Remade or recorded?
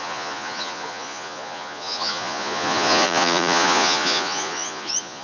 remade